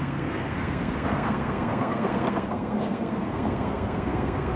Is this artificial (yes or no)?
yes